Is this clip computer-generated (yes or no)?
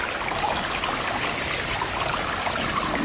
no